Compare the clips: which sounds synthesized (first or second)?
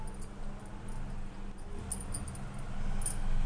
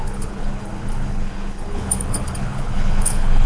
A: second